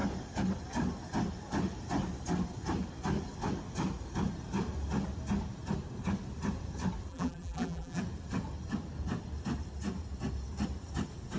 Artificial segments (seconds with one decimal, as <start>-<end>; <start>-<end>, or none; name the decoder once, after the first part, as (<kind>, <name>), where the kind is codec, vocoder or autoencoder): 7.1-8.0 (vocoder, BigVGAN v2)